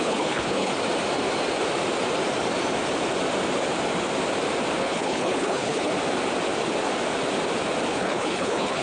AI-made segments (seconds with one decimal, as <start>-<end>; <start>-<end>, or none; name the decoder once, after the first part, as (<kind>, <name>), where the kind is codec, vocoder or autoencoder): 0.0-0.7 (codec, HILCodec); 4.8-5.9; 7.9-8.8